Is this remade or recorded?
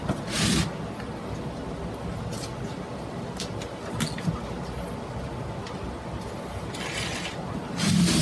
recorded